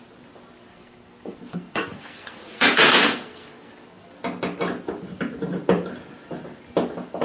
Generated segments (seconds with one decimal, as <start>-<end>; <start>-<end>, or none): 0.7-3.7